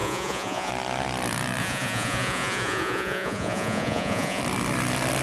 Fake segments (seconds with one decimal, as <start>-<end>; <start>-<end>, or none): 0.0-0.7; 1.6-4.4

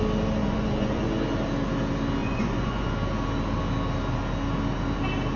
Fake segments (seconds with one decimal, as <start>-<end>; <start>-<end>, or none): 0.4-1.1; 2.2-2.9

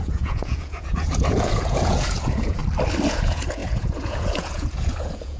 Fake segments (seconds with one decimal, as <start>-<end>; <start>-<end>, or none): 0.0-2.6; 3.1-5.4

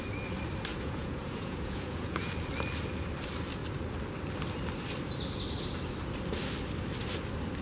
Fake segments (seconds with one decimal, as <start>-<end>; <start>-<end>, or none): 0.7-2.3

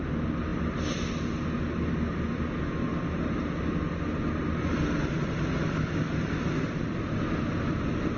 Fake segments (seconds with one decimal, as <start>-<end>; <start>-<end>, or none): none

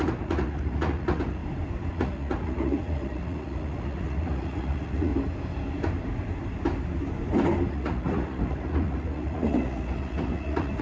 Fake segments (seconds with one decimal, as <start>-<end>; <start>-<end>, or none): 0.0-1.4; 1.9-5.1; 7.7-10.8

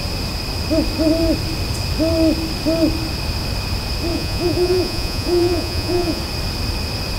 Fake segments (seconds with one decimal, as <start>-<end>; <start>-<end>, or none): 4.1-6.2